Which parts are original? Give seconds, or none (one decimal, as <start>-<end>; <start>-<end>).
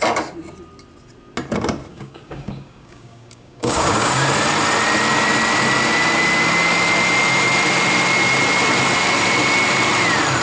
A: 0.0-1.9; 4.3-10.4